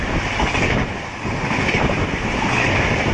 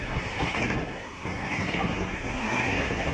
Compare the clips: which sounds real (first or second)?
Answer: first